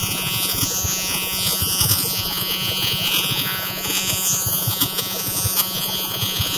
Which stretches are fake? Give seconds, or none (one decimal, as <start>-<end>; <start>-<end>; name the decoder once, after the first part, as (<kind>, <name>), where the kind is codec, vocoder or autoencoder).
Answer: 0.0-6.6 (vocoder, Vocos)